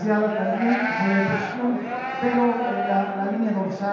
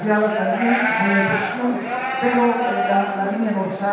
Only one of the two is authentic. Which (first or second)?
first